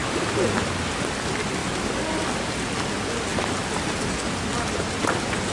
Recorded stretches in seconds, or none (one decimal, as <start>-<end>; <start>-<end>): 0.6-1.6; 2.4-3.3; 3.9-5.5